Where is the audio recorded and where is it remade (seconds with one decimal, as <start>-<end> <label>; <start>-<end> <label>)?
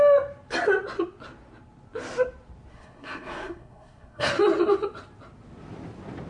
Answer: 0.0-2.7 recorded; 2.7-4.3 remade; 4.3-6.3 recorded